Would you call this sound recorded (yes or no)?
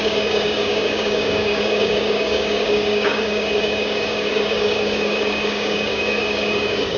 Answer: no